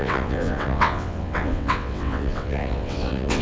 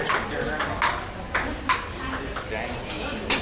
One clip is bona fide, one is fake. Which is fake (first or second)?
first